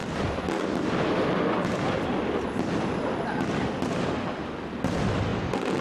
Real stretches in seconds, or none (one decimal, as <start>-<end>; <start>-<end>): 0.0-5.8